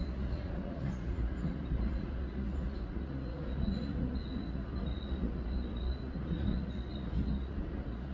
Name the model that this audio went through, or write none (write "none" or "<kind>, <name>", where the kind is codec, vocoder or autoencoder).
vocoder, Vocos